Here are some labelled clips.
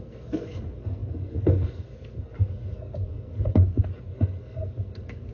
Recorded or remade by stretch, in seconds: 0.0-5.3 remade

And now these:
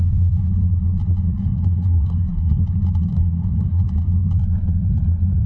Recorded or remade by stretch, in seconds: 0.0-1.4 recorded; 1.4-2.6 remade; 2.6-3.1 recorded; 3.1-3.8 remade; 3.8-5.5 recorded

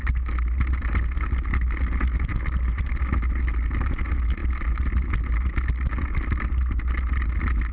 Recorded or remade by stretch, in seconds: 0.0-7.7 recorded

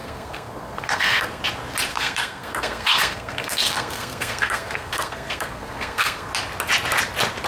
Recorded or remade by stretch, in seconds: 0.0-1.4 remade; 1.4-1.9 recorded; 1.9-6.3 remade; 6.3-7.5 recorded

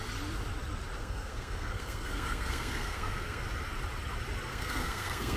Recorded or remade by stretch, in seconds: 0.0-1.0 recorded; 1.0-3.4 remade; 3.4-4.5 recorded; 4.5-5.4 remade

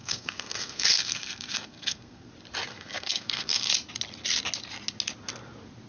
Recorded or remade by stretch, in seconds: 0.0-2.3 remade; 2.3-2.7 recorded; 2.7-3.7 remade; 3.7-5.9 recorded

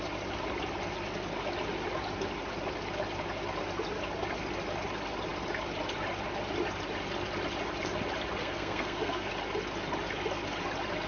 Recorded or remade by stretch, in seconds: 0.0-8.4 recorded; 8.4-9.3 remade; 9.3-11.1 recorded